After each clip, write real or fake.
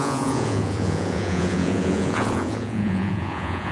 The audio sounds fake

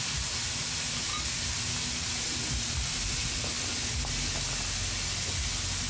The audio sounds real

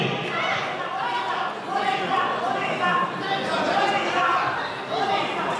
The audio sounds real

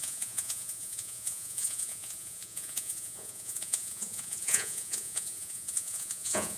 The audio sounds fake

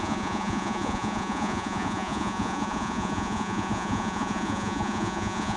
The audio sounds fake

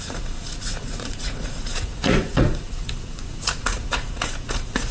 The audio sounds fake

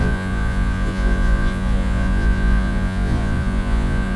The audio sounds fake